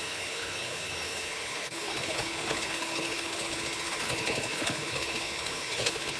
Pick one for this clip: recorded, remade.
remade